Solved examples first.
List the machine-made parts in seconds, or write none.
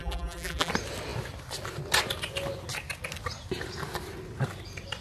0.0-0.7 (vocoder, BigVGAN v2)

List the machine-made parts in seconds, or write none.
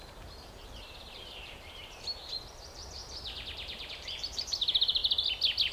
0.0-3.0 (vocoder, BigVGAN v2); 3.9-5.0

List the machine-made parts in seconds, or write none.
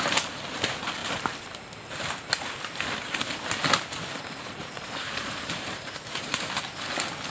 4.6-6.4 (vocoder, BigVGAN v2)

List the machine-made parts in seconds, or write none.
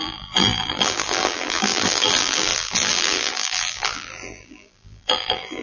0.0-5.6 (vocoder, BigVGAN v2)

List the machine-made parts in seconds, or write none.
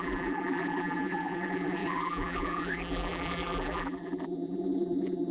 0.0-5.3 (vocoder, BigVGAN v2)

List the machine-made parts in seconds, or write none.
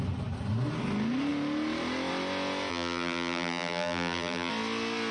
2.7-4.5 (vocoder, BigVGAN v2)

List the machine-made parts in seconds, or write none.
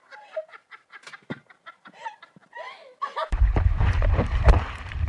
0.0-5.1 (vocoder, BigVGAN v2)